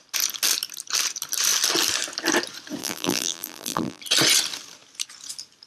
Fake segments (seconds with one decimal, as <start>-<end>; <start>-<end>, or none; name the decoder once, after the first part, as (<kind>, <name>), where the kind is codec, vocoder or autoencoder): 2.8-4.0 (vocoder, BigVGAN v2)